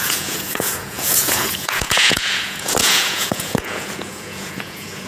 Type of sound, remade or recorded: remade